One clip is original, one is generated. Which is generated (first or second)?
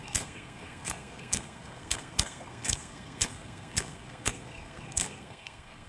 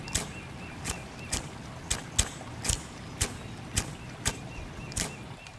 first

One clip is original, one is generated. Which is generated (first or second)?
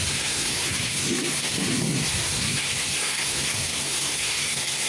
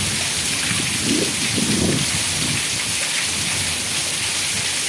first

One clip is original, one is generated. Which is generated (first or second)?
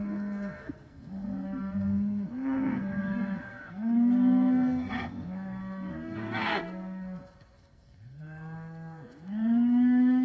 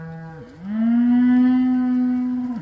first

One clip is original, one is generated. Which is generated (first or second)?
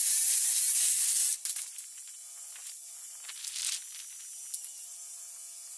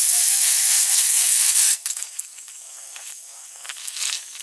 second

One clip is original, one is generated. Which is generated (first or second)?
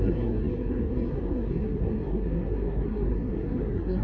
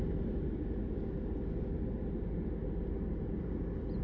first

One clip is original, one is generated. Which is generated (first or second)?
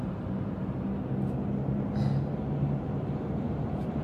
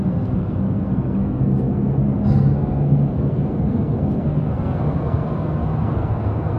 second